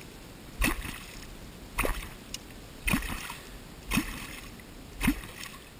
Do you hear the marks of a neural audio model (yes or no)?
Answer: no